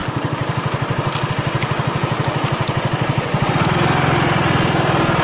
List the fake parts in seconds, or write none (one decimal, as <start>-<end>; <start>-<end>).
none